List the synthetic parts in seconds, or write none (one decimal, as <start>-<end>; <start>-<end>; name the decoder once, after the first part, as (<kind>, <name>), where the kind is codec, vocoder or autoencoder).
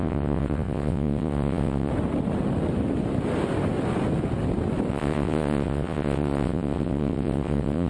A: 0.0-1.9 (vocoder, WaveNeXt); 4.9-7.9